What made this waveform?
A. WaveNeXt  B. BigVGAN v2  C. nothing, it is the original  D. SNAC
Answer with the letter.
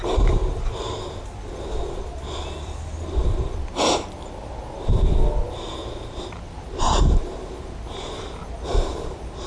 C